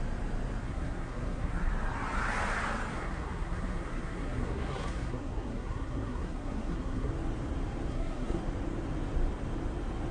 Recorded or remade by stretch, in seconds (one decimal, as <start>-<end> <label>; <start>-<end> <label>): 0.0-0.6 recorded; 0.6-1.7 remade; 1.7-2.9 recorded; 2.9-7.1 remade; 7.1-7.9 recorded; 7.9-8.4 remade; 8.4-10.1 recorded